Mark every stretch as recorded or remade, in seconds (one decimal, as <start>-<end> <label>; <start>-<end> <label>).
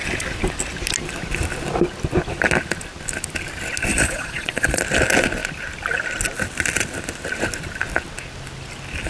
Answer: 0.0-3.9 recorded; 3.9-4.8 remade; 4.8-9.1 recorded